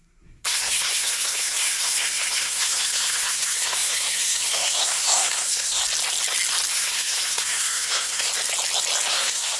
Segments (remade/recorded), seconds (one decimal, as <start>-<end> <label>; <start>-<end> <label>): 0.0-5.8 remade; 5.8-6.7 recorded; 6.7-8.3 remade; 8.3-9.1 recorded; 9.1-9.6 remade